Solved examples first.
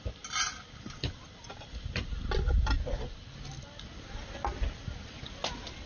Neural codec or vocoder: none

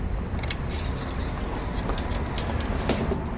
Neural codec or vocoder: none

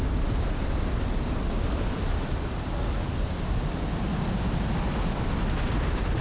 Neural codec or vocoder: none